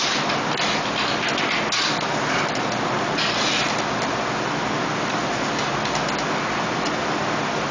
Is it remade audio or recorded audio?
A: recorded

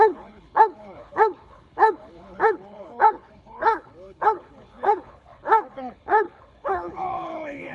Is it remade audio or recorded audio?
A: remade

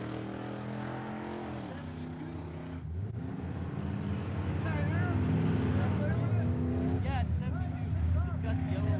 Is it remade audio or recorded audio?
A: recorded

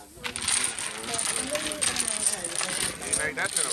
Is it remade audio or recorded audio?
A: recorded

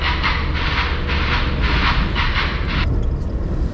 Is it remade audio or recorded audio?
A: recorded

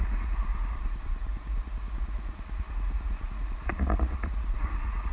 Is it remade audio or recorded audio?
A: remade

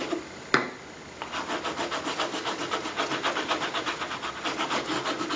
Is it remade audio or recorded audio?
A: recorded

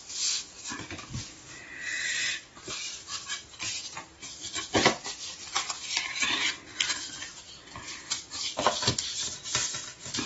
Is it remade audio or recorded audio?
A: recorded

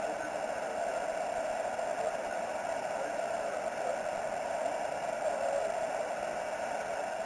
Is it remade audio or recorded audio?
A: recorded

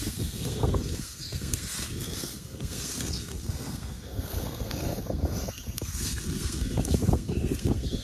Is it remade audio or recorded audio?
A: remade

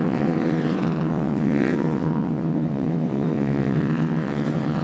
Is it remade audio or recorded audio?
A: remade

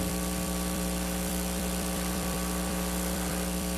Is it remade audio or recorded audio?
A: remade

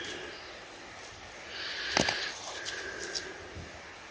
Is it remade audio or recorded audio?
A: recorded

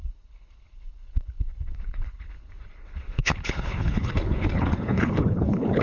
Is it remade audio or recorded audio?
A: remade